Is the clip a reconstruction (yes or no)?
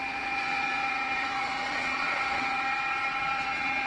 yes